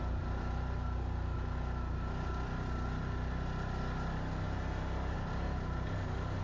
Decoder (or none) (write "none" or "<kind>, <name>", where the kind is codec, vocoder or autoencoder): none